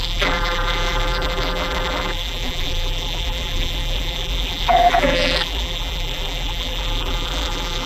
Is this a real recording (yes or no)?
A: no